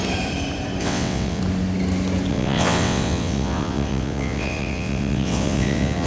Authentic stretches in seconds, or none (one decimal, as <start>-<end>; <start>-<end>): 0.0-0.8; 1.4-2.3